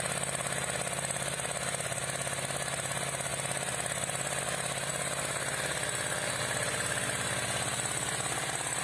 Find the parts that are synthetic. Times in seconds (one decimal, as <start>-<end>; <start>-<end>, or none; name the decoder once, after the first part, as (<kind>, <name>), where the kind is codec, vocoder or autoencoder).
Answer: none